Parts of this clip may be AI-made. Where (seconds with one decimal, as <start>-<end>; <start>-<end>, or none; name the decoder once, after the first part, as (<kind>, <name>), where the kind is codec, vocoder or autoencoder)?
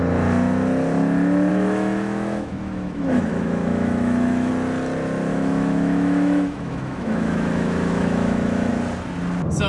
1.5-4.5 (autoencoder, DAC-VAE); 5.3-8.7